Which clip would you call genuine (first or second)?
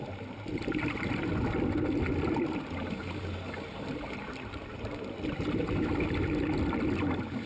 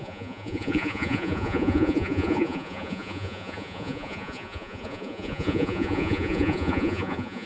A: first